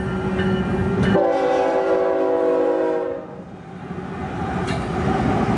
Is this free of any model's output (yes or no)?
yes